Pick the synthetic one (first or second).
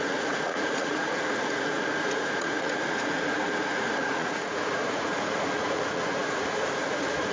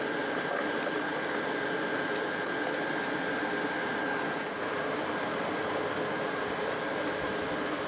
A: first